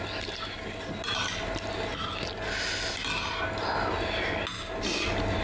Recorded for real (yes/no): yes